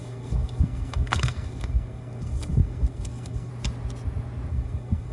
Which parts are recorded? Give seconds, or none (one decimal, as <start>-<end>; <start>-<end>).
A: 3.5-4.5